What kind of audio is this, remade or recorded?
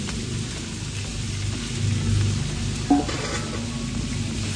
recorded